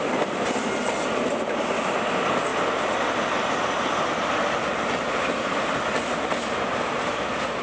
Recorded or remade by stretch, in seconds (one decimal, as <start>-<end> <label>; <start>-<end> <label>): 0.0-7.6 recorded